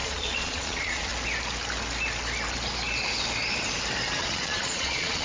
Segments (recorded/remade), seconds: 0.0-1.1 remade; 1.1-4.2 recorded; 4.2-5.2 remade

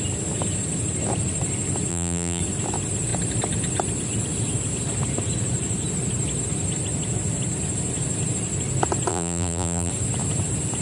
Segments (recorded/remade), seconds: 0.0-1.9 recorded; 1.9-2.4 remade; 2.4-9.1 recorded; 9.1-9.9 remade; 9.9-10.8 recorded

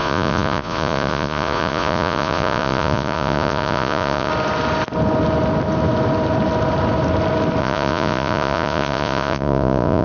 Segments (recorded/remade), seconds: 0.0-4.3 remade; 4.3-7.6 recorded; 7.6-10.0 remade